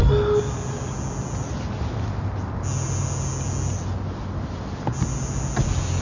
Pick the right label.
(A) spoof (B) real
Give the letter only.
B